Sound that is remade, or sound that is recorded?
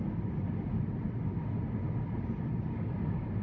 recorded